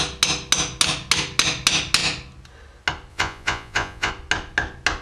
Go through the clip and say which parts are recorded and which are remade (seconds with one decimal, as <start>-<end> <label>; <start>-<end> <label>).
0.0-3.1 recorded; 3.1-4.1 remade; 4.1-5.0 recorded